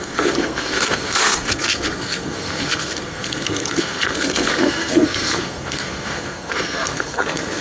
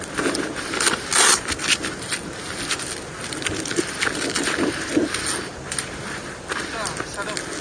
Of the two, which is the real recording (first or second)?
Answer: second